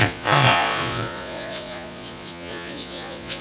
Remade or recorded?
remade